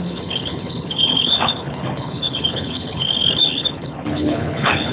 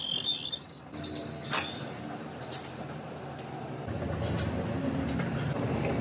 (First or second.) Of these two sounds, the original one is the second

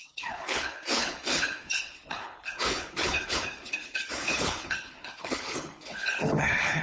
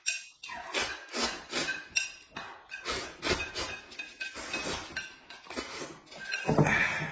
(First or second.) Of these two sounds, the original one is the second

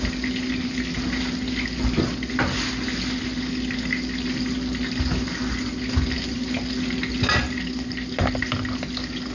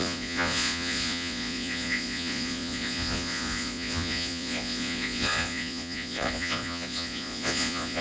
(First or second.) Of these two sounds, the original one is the first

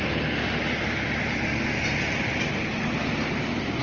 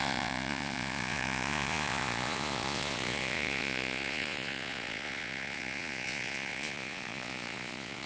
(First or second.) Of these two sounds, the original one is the first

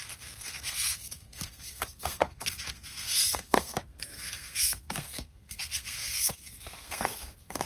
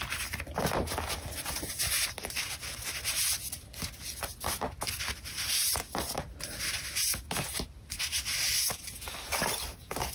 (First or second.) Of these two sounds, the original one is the second